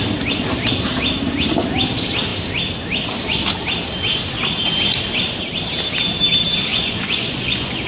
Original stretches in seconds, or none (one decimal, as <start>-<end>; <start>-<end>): 0.0-6.7